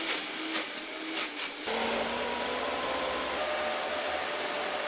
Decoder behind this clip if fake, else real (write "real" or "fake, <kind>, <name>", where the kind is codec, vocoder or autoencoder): real